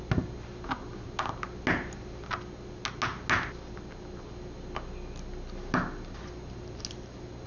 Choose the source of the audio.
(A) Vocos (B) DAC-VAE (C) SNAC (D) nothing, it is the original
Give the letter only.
D